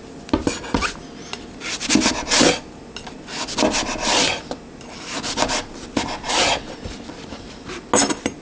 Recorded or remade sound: recorded